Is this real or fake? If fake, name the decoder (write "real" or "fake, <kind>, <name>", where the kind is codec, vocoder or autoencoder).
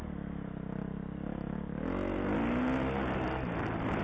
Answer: real